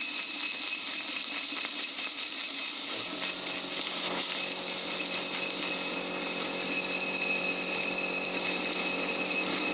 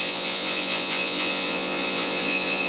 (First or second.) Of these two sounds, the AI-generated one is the second